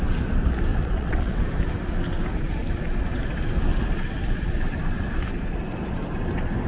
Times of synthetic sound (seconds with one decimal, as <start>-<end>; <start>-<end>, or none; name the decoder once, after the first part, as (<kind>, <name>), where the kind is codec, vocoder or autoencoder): 0.7-1.4 (vocoder, WaveNeXt)